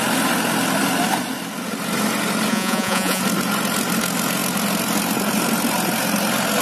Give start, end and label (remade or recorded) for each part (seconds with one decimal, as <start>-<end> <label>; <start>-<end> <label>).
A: 0.0-2.5 recorded; 2.5-3.2 remade; 3.2-6.6 recorded